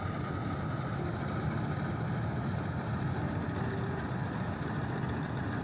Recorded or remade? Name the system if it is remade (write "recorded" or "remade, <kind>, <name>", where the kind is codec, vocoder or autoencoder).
recorded